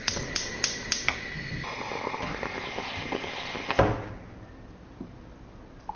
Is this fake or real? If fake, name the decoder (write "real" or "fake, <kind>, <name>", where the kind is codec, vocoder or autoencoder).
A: real